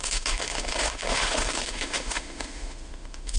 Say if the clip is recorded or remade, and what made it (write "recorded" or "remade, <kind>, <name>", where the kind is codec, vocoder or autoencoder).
remade, autoencoder, DAC-VAE